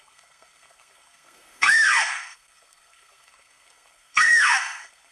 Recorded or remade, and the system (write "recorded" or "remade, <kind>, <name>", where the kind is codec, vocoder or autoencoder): remade, codec, SNAC